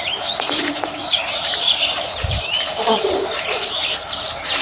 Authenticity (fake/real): fake